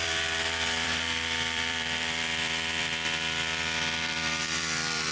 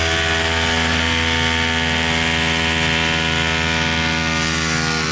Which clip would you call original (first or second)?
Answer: second